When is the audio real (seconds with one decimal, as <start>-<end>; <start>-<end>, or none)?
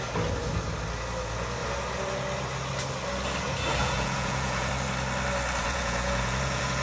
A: 0.0-3.8; 4.7-5.6